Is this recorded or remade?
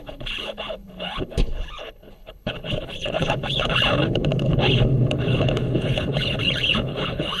remade